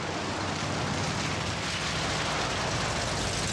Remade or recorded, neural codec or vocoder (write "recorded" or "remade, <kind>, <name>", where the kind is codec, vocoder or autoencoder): recorded